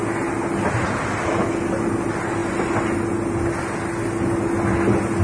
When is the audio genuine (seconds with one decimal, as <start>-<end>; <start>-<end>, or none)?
0.0-5.2